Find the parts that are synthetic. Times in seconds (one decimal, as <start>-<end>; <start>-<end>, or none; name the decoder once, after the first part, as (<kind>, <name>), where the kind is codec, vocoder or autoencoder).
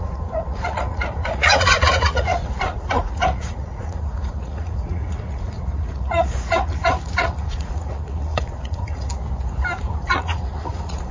0.0-9.1 (vocoder, Vocos); 9.8-11.1